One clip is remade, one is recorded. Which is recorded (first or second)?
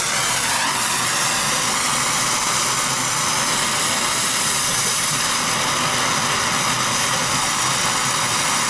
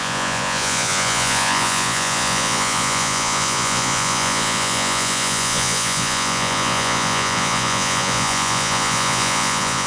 first